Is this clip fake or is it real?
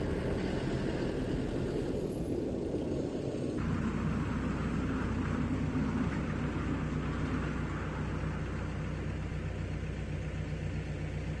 real